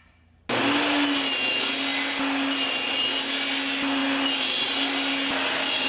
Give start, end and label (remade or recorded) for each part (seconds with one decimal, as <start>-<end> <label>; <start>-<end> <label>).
0.0-5.9 recorded